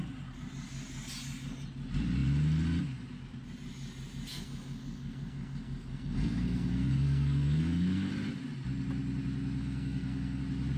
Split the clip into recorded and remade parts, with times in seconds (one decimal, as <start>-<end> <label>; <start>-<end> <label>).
0.0-4.3 recorded; 4.3-8.1 remade; 8.1-9.6 recorded; 9.6-10.4 remade; 10.4-10.8 recorded